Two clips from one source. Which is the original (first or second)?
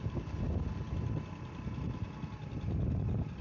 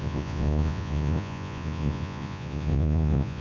first